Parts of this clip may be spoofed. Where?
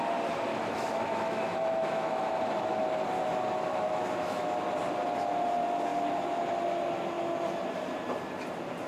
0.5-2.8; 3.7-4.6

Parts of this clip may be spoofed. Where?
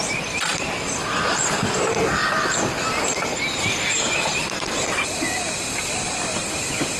0.0-2.2; 3.0-7.0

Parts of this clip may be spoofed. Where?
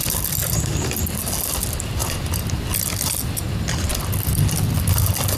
none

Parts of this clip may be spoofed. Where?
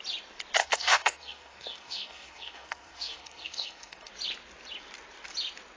0.6-4.1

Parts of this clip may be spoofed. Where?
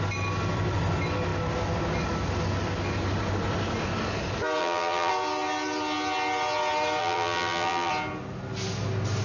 4.6-5.1; 7.0-7.9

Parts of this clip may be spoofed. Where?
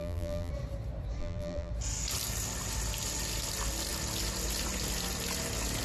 0.0-0.5; 1.2-1.7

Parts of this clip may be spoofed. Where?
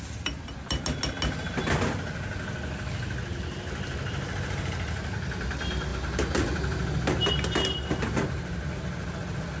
none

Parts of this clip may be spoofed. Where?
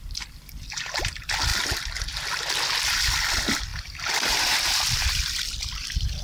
0.0-1.5; 2.8-3.7; 4.9-6.2